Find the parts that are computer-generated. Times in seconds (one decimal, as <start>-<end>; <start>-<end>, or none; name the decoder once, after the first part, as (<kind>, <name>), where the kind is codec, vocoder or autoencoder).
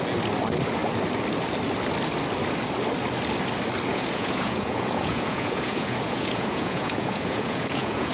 3.9-8.1 (vocoder, Vocos)